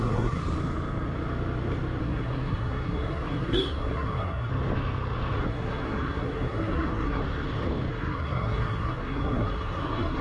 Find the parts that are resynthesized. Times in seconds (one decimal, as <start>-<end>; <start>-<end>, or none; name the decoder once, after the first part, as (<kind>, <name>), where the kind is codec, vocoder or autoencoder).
0.0-0.4 (codec, SNAC); 2.0-4.5; 5.5-7.2; 7.9-10.2